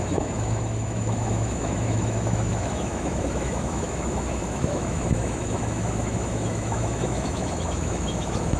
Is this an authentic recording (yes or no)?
no